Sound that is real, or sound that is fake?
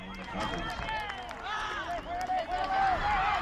real